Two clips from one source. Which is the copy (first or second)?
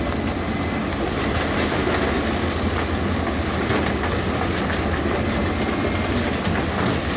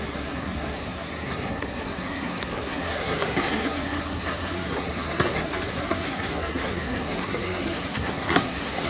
second